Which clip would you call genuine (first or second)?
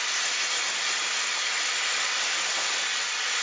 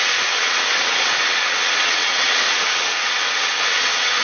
first